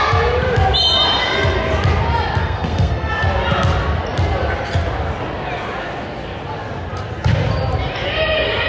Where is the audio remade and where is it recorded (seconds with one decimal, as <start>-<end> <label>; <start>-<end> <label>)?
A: 0.0-2.4 recorded; 2.4-3.1 remade; 3.1-8.7 recorded